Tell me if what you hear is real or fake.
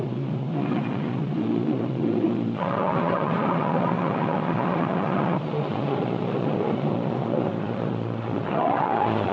fake